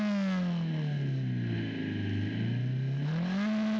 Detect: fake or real real